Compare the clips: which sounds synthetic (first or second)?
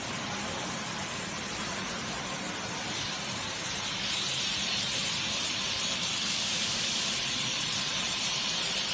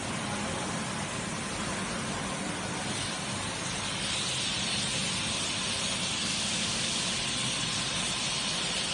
first